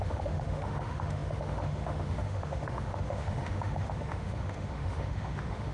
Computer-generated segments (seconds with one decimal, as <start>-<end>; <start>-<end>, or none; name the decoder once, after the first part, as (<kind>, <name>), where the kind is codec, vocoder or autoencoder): 0.0-5.7 (autoencoder, DAC-VAE)